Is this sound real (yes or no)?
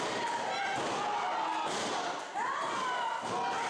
yes